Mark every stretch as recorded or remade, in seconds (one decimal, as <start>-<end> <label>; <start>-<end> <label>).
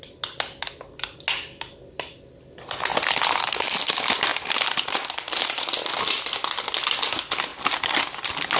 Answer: 0.0-8.6 recorded